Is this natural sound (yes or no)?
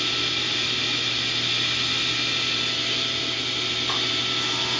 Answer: yes